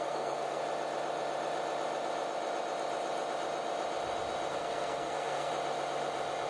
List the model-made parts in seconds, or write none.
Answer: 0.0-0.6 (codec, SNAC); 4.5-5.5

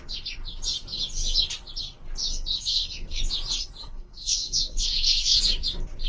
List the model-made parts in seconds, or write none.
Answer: 2.2-3.2 (codec, SNAC); 3.8-5.4

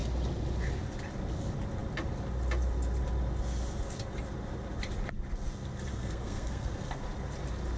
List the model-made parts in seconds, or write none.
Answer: 5.9-7.0 (codec, SNAC)